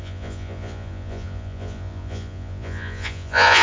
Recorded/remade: remade